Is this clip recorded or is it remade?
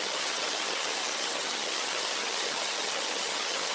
remade